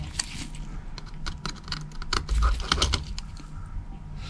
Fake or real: real